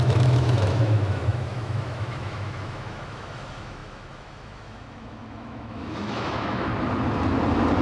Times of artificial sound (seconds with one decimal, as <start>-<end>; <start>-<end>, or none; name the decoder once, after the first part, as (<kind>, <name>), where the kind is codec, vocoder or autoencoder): 0.0-6.7 (autoencoder, DAC-VAE)